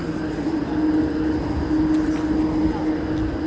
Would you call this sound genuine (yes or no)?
yes